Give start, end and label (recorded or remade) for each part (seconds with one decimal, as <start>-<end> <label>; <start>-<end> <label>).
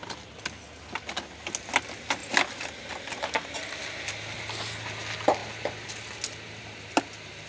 0.0-7.5 recorded